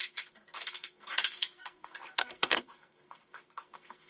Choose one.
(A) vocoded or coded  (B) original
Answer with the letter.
A